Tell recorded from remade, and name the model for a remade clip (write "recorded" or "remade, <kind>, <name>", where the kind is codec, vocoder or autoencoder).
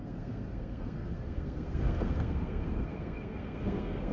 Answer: remade, codec, SNAC